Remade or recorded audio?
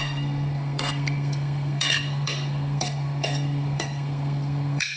remade